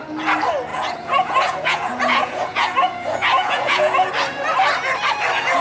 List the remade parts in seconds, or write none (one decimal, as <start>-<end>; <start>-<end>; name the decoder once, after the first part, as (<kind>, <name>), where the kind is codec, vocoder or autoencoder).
0.7-4.1 (vocoder, Vocos)